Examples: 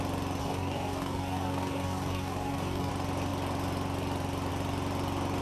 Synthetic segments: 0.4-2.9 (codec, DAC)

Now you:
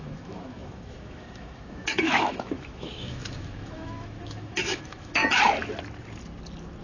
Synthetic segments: 0.0-5.2 (autoencoder, DAC-VAE)

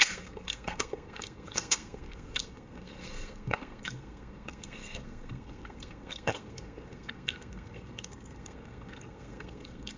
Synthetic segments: 0.0-10.0 (codec, SNAC)

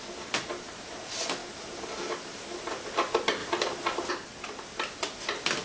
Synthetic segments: none

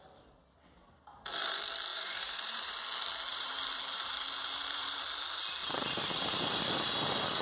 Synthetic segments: 1.9-2.8 (vocoder, BigVGAN v2); 3.3-5.0; 5.6-6.9

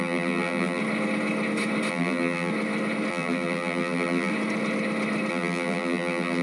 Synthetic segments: 0.0-0.8 (vocoder, BigVGAN v2); 1.9-2.5; 3.1-4.3; 5.3-6.4

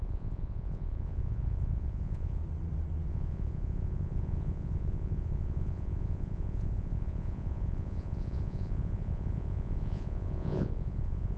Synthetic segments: 0.0-2.4 (vocoder, Vocos); 3.1-11.4